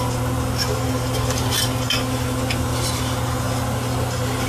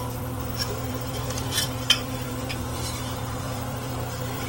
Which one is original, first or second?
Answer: first